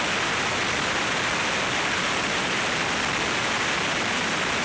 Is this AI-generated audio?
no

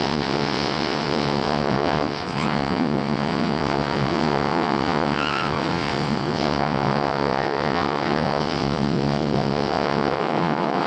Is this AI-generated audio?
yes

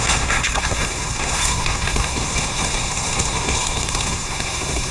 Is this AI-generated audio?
yes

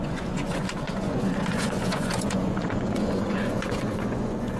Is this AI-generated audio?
yes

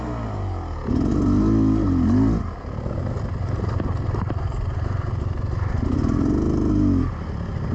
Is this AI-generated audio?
no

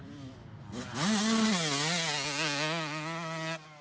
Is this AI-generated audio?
no